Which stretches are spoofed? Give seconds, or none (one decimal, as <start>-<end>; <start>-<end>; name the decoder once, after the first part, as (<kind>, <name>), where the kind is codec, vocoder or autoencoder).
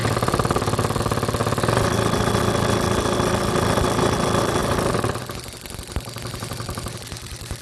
4.6-7.6 (vocoder, BigVGAN v2)